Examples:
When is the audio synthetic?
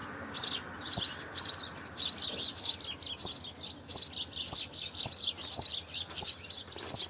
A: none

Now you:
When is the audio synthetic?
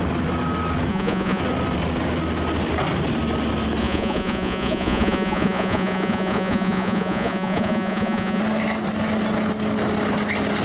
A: 0.9-1.4; 3.8-8.4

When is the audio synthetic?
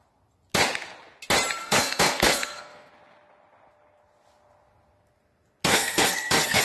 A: 1.6-2.9; 5.7-6.6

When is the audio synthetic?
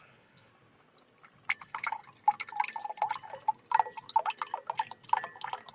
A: 0.0-0.5; 1.6-2.0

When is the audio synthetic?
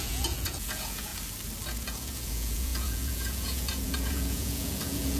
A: 0.0-1.1; 1.7-5.2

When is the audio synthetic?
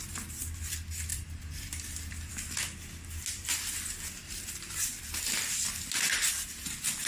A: 1.1-2.3; 4.2-5.0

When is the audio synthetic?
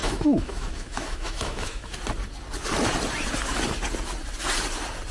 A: 0.0-1.9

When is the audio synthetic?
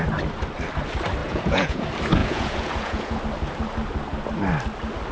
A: 1.2-1.8; 2.2-3.2